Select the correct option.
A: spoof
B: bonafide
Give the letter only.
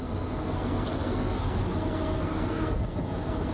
A